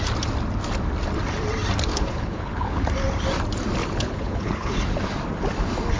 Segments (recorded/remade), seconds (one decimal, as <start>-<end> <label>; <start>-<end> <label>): 0.0-1.9 recorded; 1.9-2.8 remade; 2.8-3.8 recorded; 3.8-4.8 remade; 4.8-6.0 recorded